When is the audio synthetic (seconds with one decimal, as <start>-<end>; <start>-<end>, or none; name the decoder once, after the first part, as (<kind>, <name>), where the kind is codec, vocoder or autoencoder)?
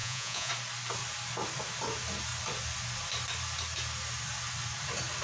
0.0-0.5 (vocoder, Vocos)